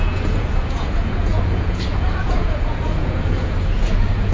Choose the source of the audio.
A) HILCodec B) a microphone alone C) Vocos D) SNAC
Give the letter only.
C